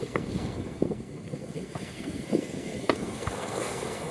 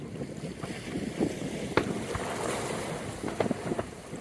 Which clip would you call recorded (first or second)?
second